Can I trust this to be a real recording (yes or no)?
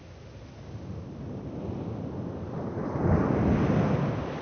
yes